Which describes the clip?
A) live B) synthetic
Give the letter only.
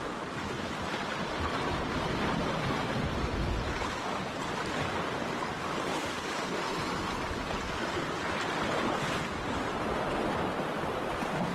A